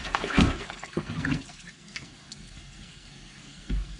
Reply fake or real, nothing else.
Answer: fake